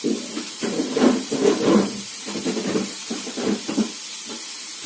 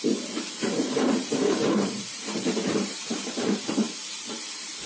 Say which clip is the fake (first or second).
second